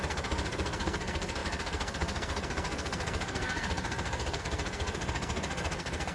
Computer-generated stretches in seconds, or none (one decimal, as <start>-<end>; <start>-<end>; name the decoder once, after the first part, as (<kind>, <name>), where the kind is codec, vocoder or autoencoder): 0.0-6.1 (codec, SNAC)